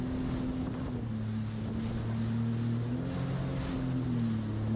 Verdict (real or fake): real